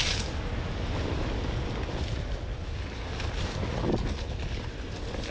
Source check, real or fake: real